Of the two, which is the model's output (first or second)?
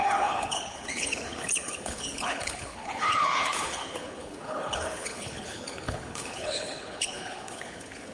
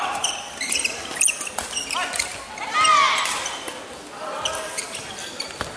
first